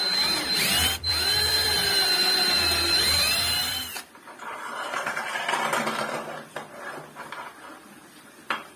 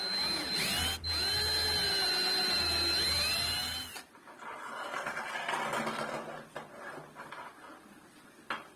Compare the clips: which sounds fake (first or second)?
first